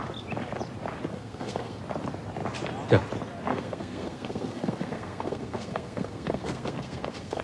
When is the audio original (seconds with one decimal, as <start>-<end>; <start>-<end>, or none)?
0.0-1.1; 1.8-3.5